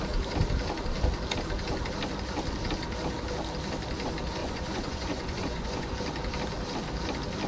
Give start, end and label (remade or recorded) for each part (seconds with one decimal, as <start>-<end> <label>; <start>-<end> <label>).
0.0-4.4 recorded; 4.4-5.9 remade; 5.9-7.5 recorded

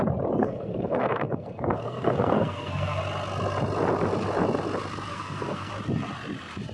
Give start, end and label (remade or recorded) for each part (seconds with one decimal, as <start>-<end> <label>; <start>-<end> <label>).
0.0-0.4 recorded; 0.4-3.0 remade; 3.0-5.1 recorded; 5.1-5.7 remade; 5.7-6.7 recorded

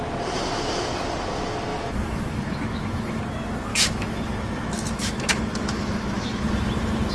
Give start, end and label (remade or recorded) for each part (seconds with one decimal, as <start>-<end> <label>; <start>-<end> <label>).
0.0-1.7 recorded; 1.7-3.2 remade; 3.2-3.7 recorded; 3.7-6.4 remade; 6.4-7.1 recorded

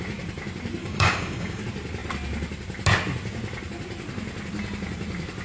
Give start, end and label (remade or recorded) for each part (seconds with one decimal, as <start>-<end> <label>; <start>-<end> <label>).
0.0-0.8 recorded; 0.8-1.6 remade; 1.6-5.4 recorded

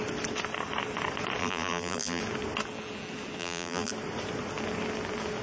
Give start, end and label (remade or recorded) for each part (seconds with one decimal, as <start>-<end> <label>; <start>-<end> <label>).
0.0-1.4 recorded; 1.4-2.2 remade; 2.2-3.4 recorded; 3.4-3.9 remade; 3.9-5.4 recorded

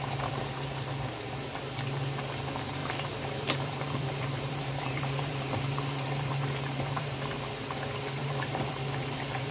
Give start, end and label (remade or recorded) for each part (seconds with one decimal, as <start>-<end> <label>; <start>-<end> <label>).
0.0-2.8 recorded; 2.8-7.5 remade; 7.5-8.2 recorded; 8.2-9.5 remade